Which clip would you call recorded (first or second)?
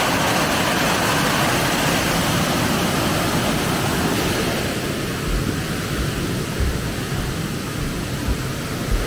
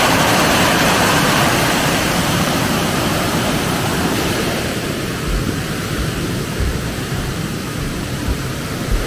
first